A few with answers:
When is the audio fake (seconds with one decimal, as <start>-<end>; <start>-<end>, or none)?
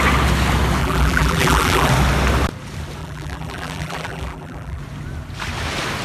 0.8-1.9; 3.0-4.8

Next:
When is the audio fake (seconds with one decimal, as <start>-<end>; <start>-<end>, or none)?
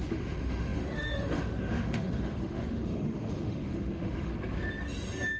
0.0-4.3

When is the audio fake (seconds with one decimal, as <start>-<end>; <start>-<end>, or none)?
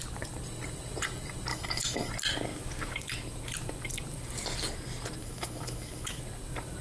1.5-2.1; 5.2-6.2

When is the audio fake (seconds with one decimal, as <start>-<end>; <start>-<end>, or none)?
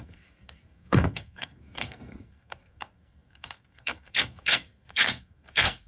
0.0-5.9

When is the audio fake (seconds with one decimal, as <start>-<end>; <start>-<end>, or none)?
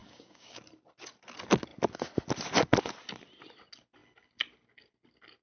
0.0-0.6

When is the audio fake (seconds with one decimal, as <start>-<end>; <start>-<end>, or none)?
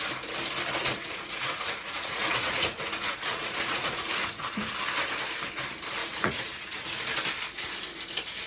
0.8-4.7; 6.0-7.0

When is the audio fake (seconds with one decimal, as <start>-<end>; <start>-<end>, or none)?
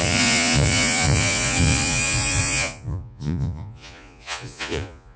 0.0-5.2